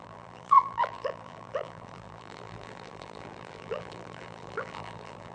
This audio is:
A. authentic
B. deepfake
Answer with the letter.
B